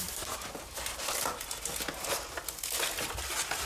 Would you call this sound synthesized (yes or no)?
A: yes